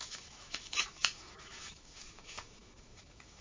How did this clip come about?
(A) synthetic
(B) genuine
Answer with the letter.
A